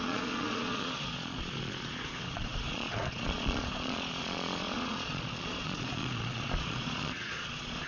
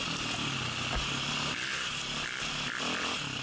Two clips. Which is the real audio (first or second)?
second